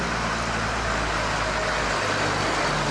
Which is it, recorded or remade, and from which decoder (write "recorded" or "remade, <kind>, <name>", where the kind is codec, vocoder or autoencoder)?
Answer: recorded